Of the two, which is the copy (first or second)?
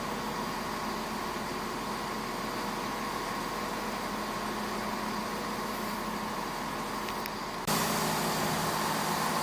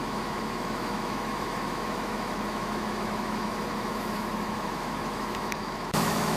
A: second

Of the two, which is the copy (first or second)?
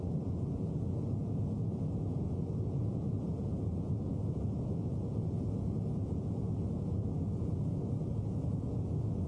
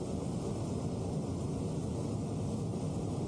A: first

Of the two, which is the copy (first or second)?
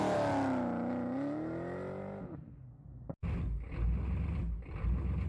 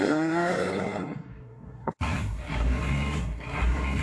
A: second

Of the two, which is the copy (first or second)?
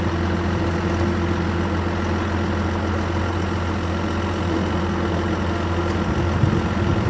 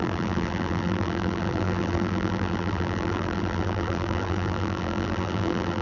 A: second